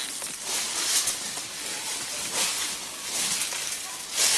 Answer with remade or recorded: recorded